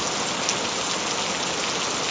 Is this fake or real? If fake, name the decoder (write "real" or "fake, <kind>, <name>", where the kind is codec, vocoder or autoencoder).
real